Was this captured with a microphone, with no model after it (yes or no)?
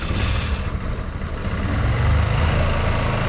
yes